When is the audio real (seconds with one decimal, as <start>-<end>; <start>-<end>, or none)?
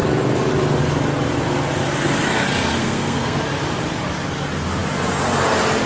0.0-2.8; 3.4-5.9